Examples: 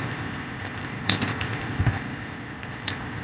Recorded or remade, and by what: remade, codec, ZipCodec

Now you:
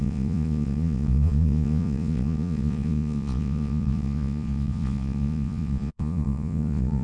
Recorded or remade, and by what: remade, vocoder, Vocos